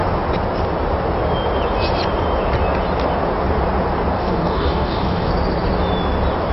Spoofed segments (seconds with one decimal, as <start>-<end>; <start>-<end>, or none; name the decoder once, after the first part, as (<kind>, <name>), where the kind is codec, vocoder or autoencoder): 4.1-5.3 (codec, DAC)